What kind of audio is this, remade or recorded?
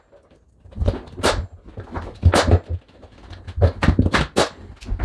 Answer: recorded